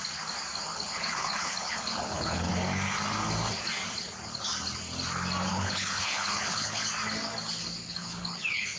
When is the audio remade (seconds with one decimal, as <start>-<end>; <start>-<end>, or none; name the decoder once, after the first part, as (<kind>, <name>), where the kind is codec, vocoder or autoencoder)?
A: 0.7-2.5 (codec, HILCodec); 5.5-6.9; 7.8-8.8